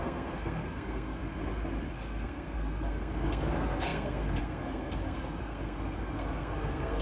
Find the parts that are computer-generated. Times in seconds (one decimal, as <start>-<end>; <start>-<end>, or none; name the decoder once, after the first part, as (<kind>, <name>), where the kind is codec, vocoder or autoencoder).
0.0-1.2 (codec, SNAC); 1.9-7.0